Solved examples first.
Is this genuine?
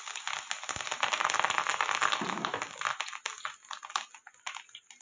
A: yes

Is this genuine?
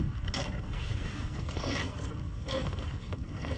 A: no